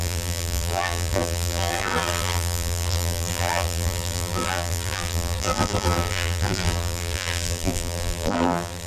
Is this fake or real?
fake